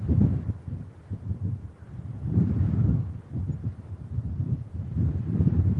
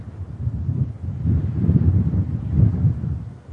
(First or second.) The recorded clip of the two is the second